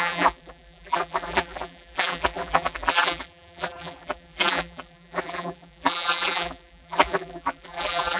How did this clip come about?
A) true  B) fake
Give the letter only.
B